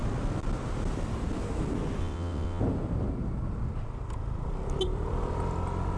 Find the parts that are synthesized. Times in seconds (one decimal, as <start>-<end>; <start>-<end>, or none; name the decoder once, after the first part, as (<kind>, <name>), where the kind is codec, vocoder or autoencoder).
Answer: 2.0-2.6 (vocoder, WaveNeXt)